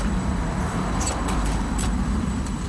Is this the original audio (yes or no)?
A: no